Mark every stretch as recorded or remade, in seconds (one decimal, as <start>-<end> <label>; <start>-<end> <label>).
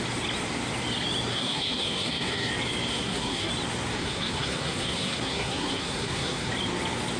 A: 0.0-1.3 recorded; 1.3-2.5 remade; 2.5-2.9 recorded; 2.9-3.5 remade; 3.5-4.0 recorded; 4.0-6.5 remade; 6.5-7.2 recorded